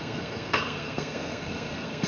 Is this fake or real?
fake